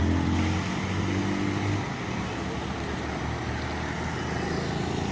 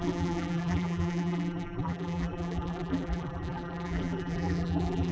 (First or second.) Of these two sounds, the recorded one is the first